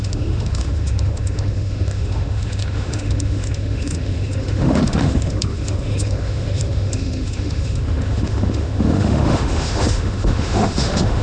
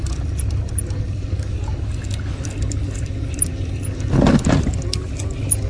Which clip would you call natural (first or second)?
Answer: second